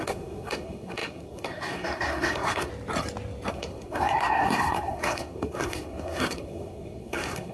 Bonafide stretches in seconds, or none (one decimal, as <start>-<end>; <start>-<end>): 2.7-3.5